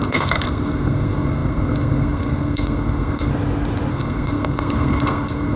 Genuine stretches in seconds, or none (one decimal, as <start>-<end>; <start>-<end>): 3.3-3.9